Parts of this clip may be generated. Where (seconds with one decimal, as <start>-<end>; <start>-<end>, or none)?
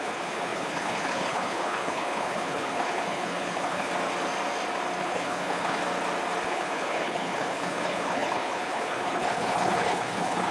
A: 0.0-3.9; 5.0-5.8; 6.5-10.5